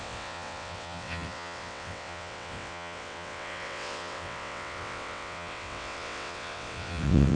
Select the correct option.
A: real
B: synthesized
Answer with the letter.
B